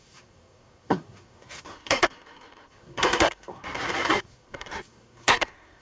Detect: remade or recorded remade